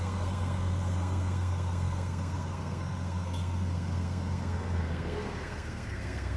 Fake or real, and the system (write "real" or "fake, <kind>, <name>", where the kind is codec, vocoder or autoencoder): fake, codec, SNAC